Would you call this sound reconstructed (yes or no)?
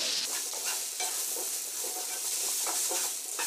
no